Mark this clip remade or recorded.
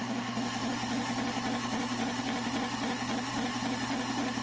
recorded